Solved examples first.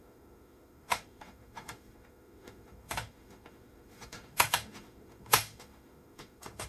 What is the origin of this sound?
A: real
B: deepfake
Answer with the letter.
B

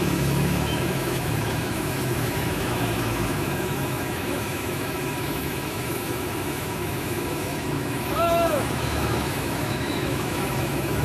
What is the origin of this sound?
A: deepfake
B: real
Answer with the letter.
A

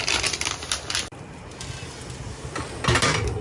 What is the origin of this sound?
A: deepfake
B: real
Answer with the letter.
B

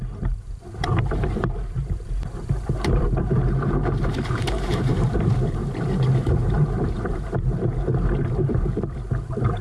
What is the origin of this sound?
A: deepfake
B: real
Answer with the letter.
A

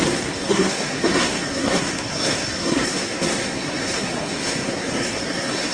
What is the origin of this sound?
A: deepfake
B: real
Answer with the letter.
A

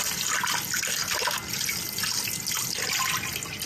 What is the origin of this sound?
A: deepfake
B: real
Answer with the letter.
B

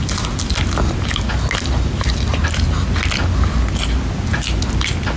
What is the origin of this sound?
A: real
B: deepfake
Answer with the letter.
A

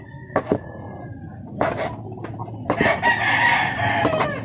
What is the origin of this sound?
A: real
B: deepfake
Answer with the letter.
A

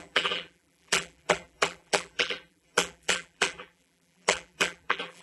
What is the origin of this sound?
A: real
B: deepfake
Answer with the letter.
B